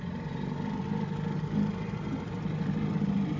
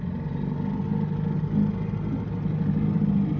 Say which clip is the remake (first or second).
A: first